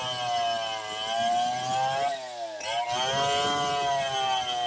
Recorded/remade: recorded